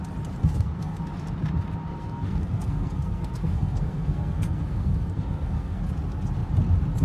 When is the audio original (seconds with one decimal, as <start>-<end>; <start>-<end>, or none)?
0.0-0.4; 1.0-1.9; 5.9-7.0